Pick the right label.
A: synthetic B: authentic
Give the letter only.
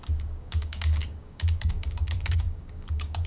A